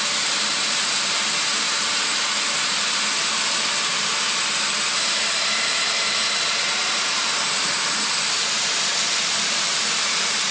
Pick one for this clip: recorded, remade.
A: remade